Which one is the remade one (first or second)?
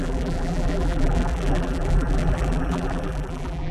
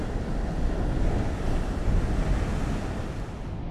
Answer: first